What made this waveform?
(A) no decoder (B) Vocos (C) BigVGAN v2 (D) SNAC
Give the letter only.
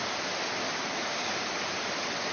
C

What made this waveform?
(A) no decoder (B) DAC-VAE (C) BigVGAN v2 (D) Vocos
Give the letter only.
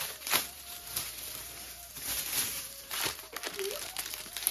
C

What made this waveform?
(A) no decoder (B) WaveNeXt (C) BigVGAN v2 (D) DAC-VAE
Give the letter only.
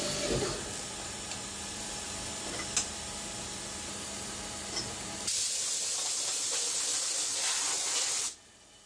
A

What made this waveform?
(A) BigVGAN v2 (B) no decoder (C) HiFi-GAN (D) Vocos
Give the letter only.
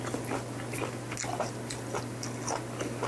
B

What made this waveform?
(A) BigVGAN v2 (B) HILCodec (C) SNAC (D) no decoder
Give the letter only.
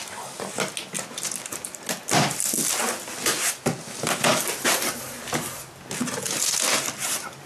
D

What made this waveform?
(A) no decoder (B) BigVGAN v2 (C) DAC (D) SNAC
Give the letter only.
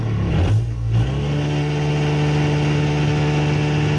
A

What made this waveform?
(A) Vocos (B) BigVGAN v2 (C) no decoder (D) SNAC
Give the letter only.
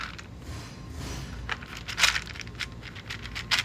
C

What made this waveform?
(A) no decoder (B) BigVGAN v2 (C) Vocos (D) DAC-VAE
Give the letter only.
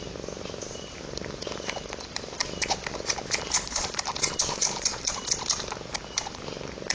B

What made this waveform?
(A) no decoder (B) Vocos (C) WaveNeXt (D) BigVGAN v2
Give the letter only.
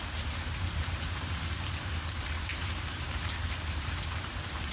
D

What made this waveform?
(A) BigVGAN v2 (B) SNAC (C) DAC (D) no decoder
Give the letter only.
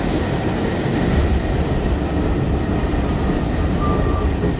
D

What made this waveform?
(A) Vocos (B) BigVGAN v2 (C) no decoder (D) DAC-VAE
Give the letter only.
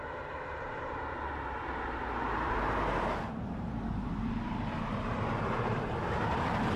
B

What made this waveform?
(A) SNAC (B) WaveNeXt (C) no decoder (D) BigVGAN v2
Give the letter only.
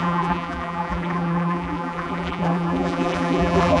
D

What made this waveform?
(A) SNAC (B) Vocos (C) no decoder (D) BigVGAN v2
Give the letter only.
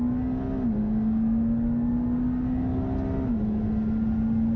C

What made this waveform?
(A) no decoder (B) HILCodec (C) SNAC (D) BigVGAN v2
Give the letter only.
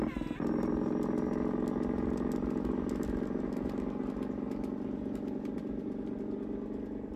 A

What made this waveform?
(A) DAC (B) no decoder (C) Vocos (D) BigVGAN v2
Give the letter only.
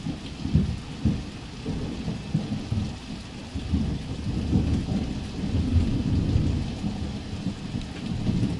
B